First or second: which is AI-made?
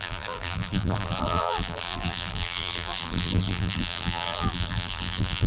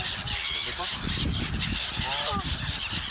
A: first